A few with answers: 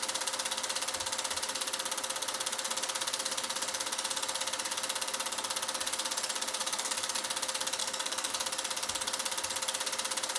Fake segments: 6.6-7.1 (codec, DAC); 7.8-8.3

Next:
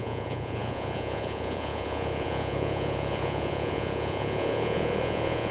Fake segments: 0.0-5.5 (vocoder, Vocos)

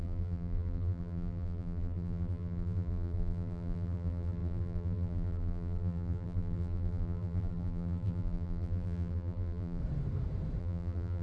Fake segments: 0.0-9.8 (vocoder, BigVGAN v2); 10.6-11.2

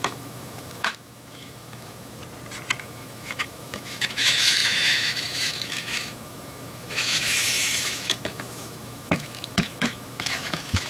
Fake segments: 0.0-2.2 (autoencoder, DAC-VAE); 2.8-10.9

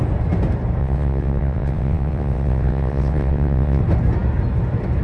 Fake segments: 0.8-3.8 (vocoder, WaveNeXt)

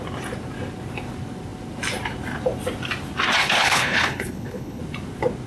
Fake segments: 3.4-4.8 (codec, HILCodec)

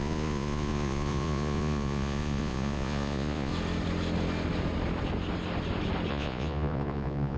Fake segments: 0.0-3.5 (vocoder, Vocos); 6.1-7.4

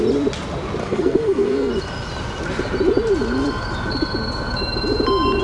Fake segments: 0.8-1.7 (codec, SNAC)